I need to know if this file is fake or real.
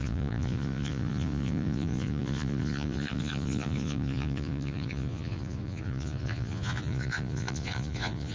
fake